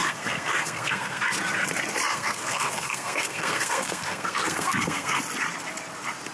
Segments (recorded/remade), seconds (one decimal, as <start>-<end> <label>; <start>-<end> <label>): 0.0-1.2 remade; 1.2-2.1 recorded; 2.1-5.2 remade; 5.2-6.3 recorded